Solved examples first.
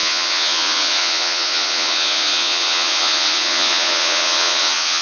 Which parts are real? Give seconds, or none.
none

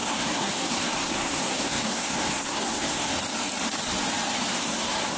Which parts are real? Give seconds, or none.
3.1-4.5

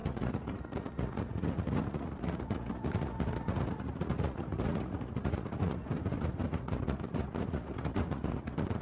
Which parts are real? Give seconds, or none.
none

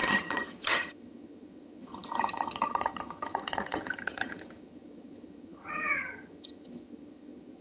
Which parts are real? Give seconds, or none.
none